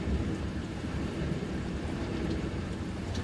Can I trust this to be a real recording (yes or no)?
no